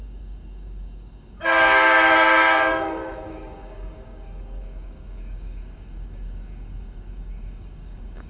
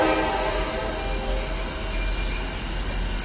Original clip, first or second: second